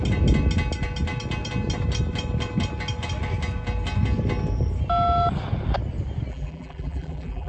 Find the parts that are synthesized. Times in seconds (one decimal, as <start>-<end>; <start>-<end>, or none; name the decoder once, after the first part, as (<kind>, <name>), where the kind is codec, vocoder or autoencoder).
6.3-7.5 (vocoder, BigVGAN v2)